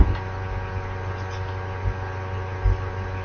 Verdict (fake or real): real